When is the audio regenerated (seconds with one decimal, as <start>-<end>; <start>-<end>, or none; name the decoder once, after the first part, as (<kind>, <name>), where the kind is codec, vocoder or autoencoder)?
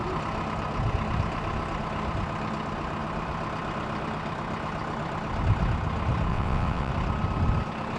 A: 6.3-6.9 (vocoder, WaveNeXt)